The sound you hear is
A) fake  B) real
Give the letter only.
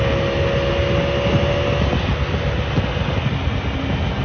B